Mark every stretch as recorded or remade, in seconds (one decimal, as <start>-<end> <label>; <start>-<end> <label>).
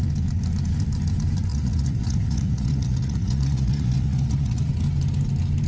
0.0-1.5 recorded; 1.5-4.7 remade; 4.7-5.7 recorded